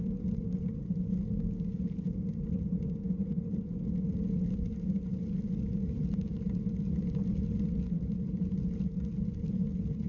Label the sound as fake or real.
real